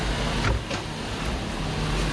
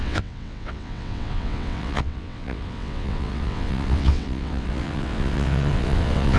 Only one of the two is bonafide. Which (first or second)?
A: first